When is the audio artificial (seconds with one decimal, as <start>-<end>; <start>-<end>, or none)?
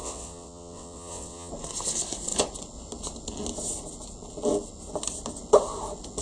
0.0-1.5